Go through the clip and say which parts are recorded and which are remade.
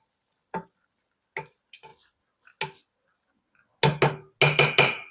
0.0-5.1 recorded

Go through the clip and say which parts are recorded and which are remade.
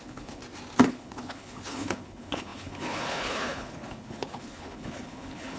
0.0-0.4 remade; 0.4-0.9 recorded; 0.9-5.6 remade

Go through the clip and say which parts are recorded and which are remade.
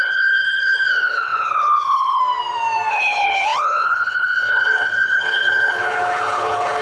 0.0-2.2 remade; 2.2-2.9 recorded; 2.9-6.8 remade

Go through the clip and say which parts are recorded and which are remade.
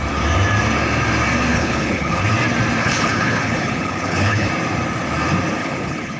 0.0-1.5 recorded; 1.5-2.3 remade; 2.3-2.8 recorded; 2.8-4.5 remade; 4.5-5.6 recorded; 5.6-6.2 remade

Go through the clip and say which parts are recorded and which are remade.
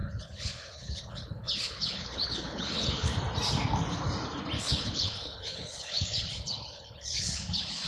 0.0-3.1 remade; 3.1-4.6 recorded; 4.6-7.9 remade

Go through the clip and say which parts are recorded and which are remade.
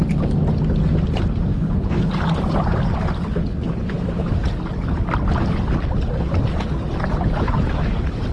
0.0-1.5 recorded; 1.5-2.1 remade; 2.1-8.3 recorded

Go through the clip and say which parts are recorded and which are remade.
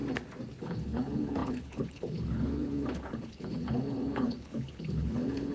0.0-0.6 recorded; 0.6-5.5 remade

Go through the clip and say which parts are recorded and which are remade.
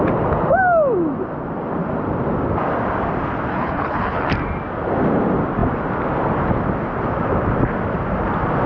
0.0-3.5 recorded; 3.5-4.3 remade; 4.3-8.7 recorded